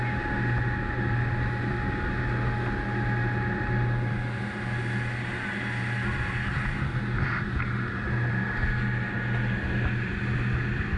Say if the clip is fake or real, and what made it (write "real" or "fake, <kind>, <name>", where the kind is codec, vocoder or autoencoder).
real